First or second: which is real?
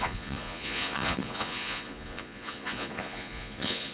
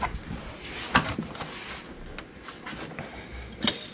second